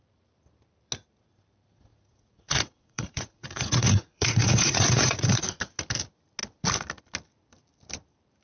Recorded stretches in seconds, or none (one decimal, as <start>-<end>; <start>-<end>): 0.0-1.9; 5.4-8.4